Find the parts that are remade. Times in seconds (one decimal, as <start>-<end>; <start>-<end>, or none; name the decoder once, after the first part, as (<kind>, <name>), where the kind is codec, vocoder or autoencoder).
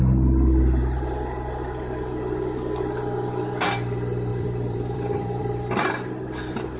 4.3-6.8 (vocoder, BigVGAN v2)